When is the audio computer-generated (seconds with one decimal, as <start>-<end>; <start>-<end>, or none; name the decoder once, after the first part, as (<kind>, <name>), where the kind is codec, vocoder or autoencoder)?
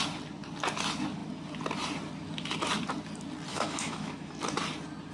3.5-4.3 (autoencoder, DAC-VAE)